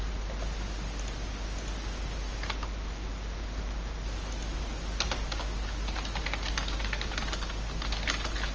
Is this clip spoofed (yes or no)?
no